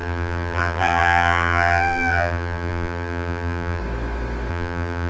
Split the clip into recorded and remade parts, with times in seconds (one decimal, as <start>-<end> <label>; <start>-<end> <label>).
0.0-3.8 remade; 3.8-4.5 recorded; 4.5-5.1 remade